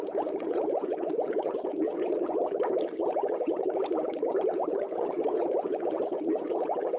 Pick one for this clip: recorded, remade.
remade